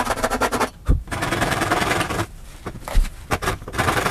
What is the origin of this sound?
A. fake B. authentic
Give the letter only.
A